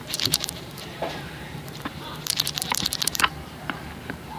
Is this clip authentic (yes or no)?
no